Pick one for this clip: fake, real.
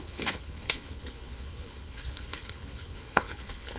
fake